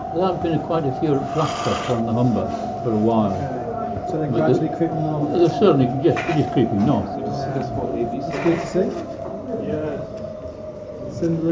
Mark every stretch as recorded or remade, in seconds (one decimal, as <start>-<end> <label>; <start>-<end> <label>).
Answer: 0.0-3.6 recorded; 3.6-6.3 remade; 6.3-11.5 recorded